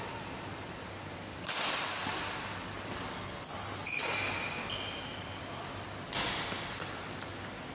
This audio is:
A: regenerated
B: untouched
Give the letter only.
B